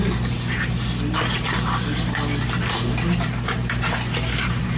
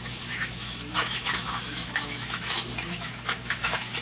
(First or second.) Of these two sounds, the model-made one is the second